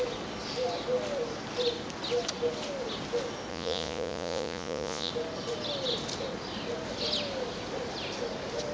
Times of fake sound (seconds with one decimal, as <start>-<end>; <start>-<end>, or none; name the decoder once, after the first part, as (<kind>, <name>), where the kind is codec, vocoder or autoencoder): 3.5-5.1 (vocoder, Vocos)